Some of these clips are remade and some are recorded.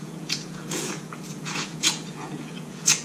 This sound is remade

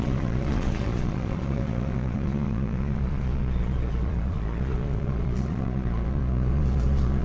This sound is remade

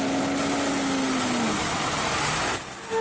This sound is recorded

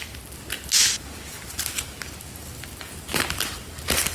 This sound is recorded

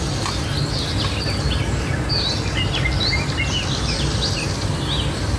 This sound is recorded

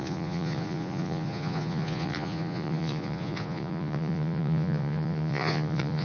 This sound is remade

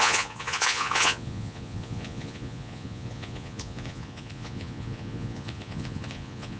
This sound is remade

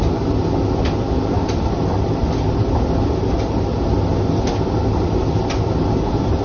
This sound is recorded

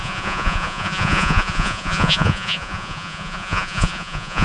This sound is remade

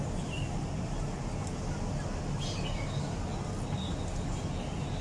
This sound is recorded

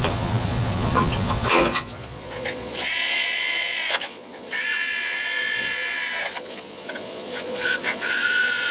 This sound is remade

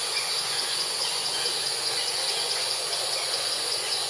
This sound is remade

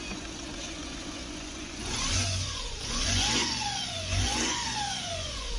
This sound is remade